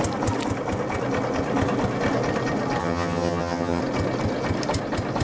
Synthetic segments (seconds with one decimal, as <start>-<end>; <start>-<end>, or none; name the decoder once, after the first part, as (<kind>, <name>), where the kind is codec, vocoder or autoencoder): 2.8-3.8 (vocoder, HiFi-GAN)